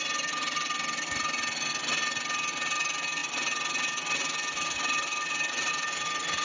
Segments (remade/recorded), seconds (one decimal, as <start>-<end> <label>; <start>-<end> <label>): 0.0-6.4 recorded